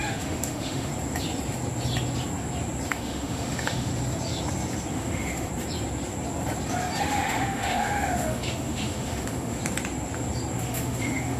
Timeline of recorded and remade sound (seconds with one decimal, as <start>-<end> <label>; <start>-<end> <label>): 0.0-0.9 remade; 0.9-2.9 recorded; 2.9-3.9 remade; 3.9-4.9 recorded; 4.9-5.5 remade; 5.5-7.0 recorded; 7.0-9.6 remade; 9.6-10.6 recorded; 10.6-11.4 remade